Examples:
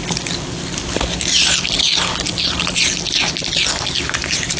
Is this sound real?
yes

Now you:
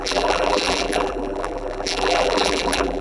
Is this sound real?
no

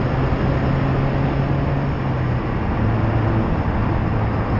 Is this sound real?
yes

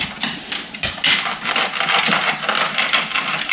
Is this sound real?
yes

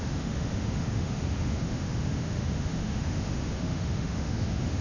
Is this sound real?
no